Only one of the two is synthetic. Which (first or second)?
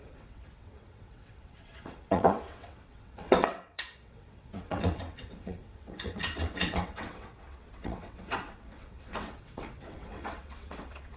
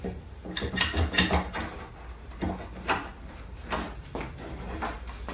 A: first